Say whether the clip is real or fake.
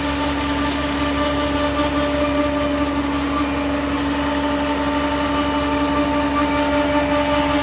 real